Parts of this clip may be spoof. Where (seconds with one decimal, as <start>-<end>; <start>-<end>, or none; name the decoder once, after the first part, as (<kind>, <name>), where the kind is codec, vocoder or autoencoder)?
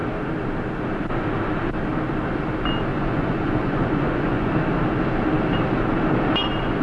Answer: 2.9-4.5 (vocoder, Vocos)